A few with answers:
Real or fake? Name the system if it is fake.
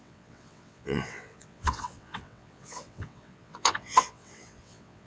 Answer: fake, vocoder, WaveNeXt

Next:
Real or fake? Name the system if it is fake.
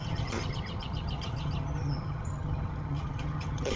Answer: fake, vocoder, HiFi-GAN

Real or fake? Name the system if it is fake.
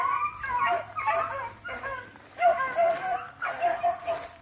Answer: real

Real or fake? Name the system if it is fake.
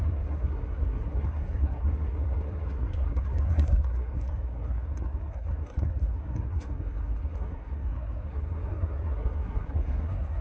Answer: fake, codec, SNAC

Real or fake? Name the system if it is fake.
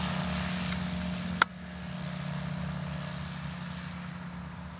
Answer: real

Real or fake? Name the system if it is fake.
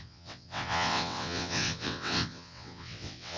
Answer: fake, vocoder, WaveNeXt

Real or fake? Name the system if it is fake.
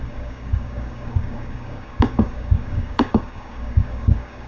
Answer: fake, codec, DAC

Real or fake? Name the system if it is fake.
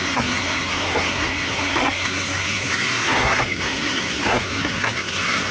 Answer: fake, codec, SNAC